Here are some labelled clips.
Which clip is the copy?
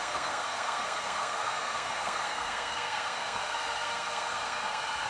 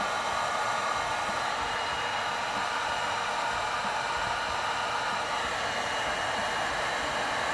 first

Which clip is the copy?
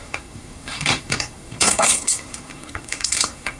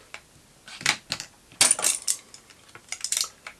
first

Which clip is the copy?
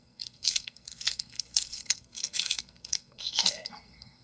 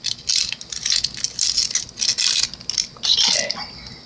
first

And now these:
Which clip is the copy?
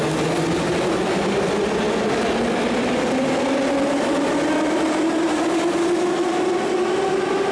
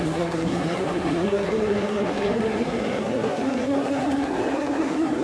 second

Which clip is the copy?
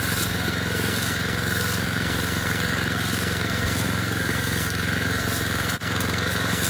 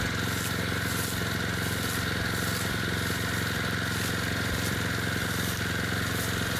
first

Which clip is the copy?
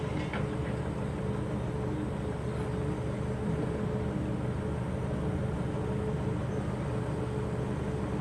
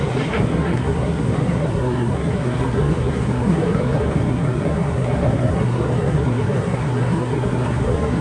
second